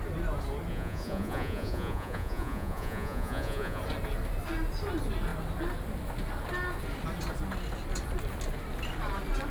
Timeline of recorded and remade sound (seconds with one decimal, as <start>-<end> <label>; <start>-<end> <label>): 0.0-0.7 recorded; 0.7-3.8 remade; 3.8-9.5 recorded